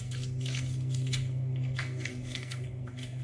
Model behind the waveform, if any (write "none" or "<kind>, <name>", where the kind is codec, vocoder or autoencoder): codec, SNAC